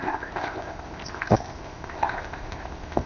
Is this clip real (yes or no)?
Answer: no